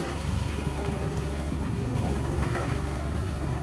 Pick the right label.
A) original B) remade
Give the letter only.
B